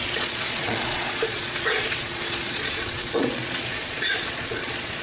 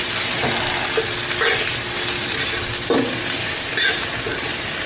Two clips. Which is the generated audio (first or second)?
first